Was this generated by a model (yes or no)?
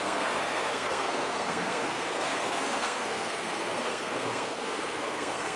yes